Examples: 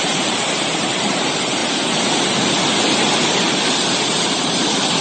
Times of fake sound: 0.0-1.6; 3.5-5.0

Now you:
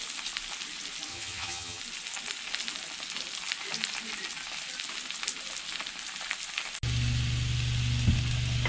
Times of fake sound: 1.1-1.8

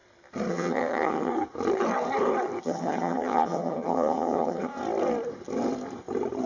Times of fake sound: 0.5-1.3; 2.6-4.7

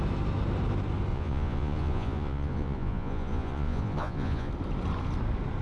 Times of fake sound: 1.1-4.5

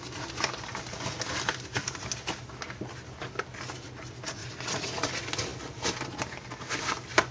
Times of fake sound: 4.4-5.1